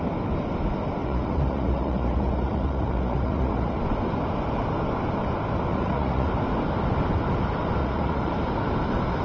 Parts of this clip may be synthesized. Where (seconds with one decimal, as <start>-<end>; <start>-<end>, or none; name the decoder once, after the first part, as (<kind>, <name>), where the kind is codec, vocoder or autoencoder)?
1.0-3.8 (vocoder, Vocos); 5.7-6.3; 7.8-8.3